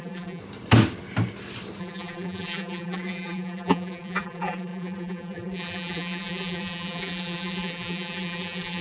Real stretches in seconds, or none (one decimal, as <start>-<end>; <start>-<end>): 0.4-1.8